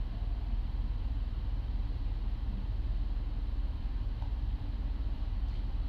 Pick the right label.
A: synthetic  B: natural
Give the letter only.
A